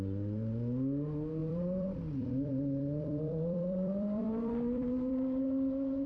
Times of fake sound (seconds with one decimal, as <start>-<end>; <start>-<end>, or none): 1.4-5.1